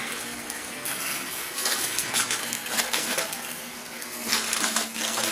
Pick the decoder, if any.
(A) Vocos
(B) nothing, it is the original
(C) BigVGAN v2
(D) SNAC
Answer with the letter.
D